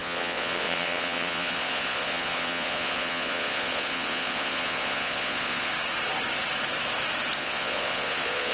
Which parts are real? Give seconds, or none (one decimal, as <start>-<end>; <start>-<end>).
5.7-7.4